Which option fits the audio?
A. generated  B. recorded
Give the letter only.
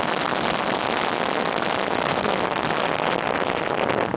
B